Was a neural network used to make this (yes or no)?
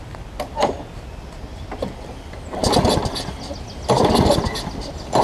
no